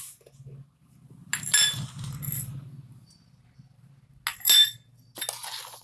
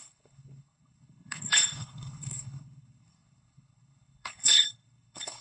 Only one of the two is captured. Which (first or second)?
first